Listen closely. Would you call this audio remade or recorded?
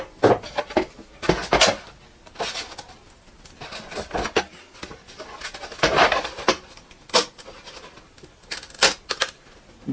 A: recorded